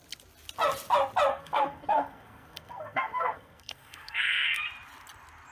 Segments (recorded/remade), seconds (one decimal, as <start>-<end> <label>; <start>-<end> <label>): 0.0-1.3 recorded; 1.3-4.6 remade; 4.6-5.5 recorded